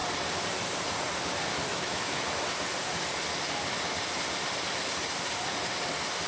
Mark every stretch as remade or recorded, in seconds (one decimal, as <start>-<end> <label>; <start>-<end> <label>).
0.0-1.7 recorded; 1.7-2.3 remade; 2.3-6.3 recorded